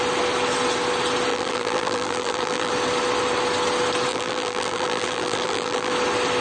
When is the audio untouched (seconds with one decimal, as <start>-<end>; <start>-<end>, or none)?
0.0-1.3; 2.7-4.1; 5.9-6.4